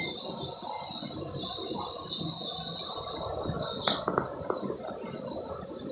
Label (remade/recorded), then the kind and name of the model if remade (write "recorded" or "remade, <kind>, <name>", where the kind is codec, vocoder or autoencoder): recorded